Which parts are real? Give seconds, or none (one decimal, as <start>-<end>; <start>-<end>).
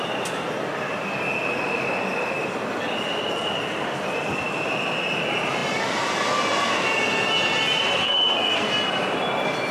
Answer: 0.0-8.0; 8.7-9.7